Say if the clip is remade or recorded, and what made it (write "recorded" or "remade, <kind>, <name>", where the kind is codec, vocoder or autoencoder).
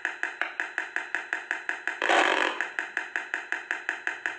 recorded